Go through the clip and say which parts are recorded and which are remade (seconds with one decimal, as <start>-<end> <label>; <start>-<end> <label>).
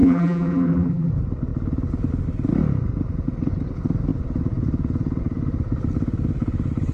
0.0-1.1 remade; 1.1-6.9 recorded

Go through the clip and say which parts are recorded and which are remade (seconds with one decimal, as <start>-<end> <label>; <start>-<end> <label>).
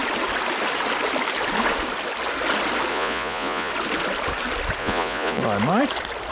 0.0-2.9 recorded; 2.9-3.7 remade; 3.7-4.8 recorded; 4.8-5.4 remade; 5.4-6.3 recorded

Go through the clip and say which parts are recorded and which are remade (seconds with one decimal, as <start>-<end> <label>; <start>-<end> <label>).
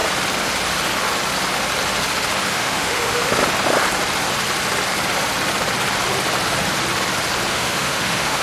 0.0-2.5 recorded; 2.5-3.4 remade; 3.4-7.5 recorded; 7.5-8.4 remade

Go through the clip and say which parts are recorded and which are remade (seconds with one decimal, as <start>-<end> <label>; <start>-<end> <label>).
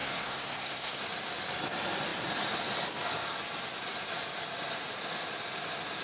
0.0-1.0 remade; 1.0-6.0 recorded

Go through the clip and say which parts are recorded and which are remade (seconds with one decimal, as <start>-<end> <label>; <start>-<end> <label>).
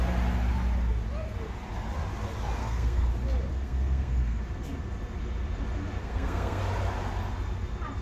0.0-2.6 recorded; 2.6-3.1 remade; 3.1-3.5 recorded; 3.5-4.4 remade; 4.4-6.0 recorded; 6.0-6.6 remade; 6.6-8.0 recorded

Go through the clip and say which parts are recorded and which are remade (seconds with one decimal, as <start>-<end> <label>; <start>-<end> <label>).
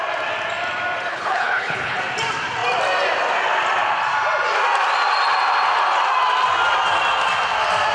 0.0-1.1 recorded; 1.1-2.0 remade; 2.0-7.9 recorded